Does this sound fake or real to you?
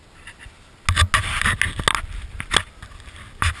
real